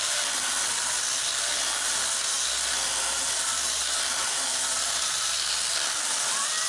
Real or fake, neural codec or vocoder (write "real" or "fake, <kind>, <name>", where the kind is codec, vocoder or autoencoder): real